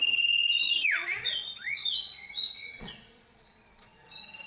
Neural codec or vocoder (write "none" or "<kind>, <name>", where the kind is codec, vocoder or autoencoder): vocoder, Vocos